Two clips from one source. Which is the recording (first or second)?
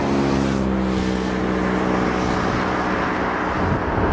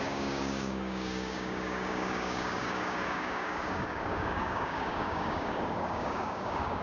first